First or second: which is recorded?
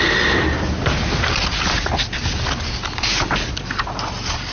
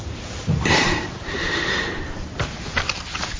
first